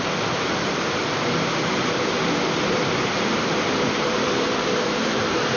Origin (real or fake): fake